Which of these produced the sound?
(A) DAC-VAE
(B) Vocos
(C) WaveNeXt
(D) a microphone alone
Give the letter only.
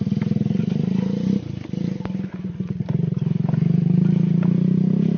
D